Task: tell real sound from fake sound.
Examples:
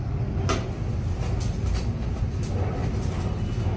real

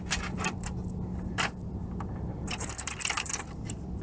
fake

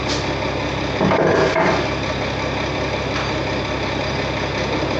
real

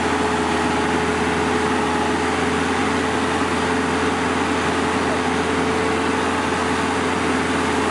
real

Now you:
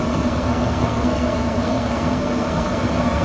fake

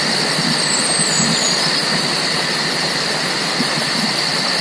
real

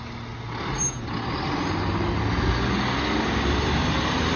real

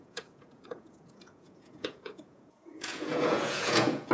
fake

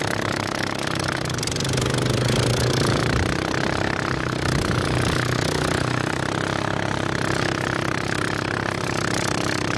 real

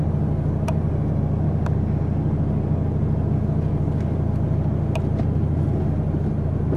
real